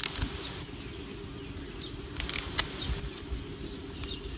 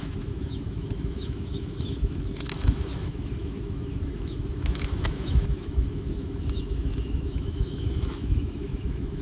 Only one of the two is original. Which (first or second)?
first